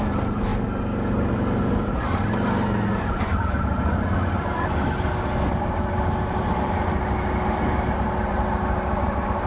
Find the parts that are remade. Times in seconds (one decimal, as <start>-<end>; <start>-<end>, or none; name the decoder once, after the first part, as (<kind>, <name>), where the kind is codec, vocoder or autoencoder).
none